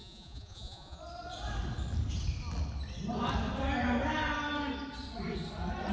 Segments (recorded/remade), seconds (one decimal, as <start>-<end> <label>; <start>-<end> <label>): 0.0-1.0 remade; 1.0-5.9 recorded